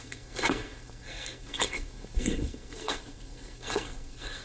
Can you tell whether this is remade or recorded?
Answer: remade